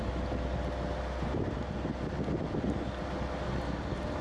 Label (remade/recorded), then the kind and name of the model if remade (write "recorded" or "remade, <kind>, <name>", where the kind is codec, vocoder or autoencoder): recorded